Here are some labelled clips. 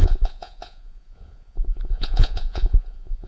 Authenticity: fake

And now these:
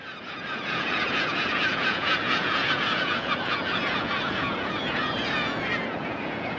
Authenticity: fake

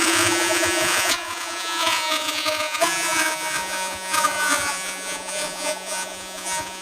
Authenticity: fake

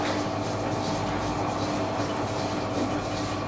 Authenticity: real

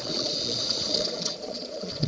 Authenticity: fake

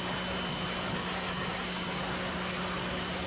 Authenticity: real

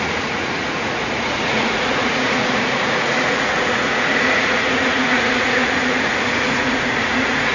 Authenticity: fake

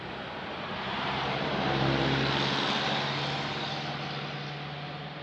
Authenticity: real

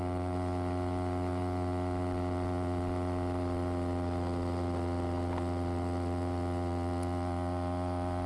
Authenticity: real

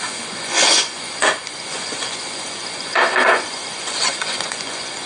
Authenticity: fake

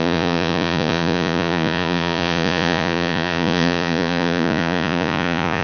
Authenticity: fake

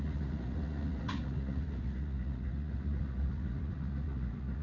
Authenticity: fake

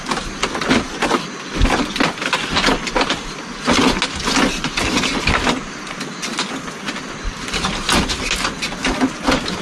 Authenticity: real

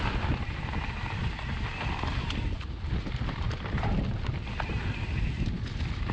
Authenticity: real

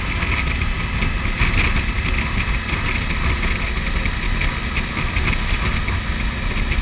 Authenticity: real